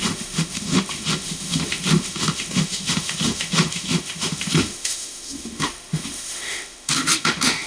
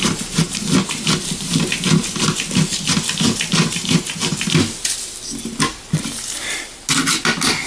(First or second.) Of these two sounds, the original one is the second